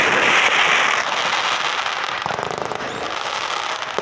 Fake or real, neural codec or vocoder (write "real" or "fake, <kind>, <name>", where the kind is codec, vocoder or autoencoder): real